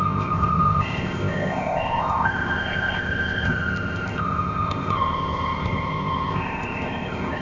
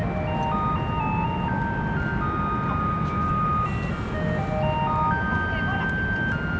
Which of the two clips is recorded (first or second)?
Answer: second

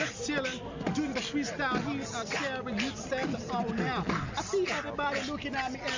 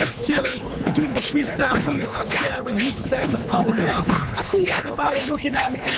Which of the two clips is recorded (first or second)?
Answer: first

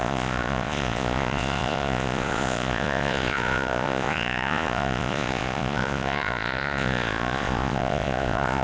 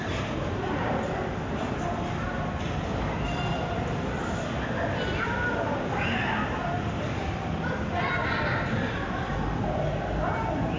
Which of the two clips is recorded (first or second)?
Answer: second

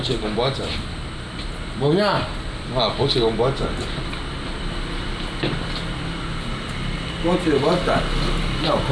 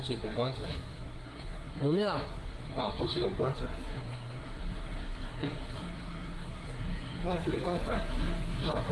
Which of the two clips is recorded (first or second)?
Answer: first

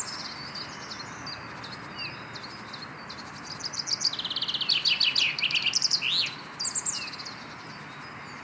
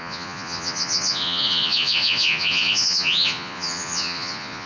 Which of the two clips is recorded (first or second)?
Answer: first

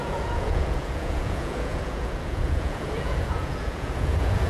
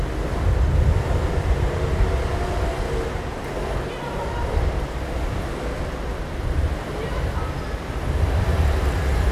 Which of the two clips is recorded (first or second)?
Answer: second